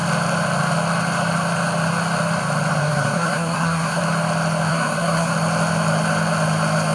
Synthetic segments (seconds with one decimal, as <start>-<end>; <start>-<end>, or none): 2.8-4.0; 4.7-5.3